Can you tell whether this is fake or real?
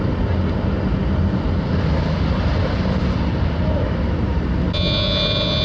real